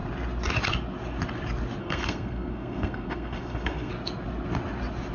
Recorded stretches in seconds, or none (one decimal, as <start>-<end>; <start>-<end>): 0.0-1.8; 3.9-5.1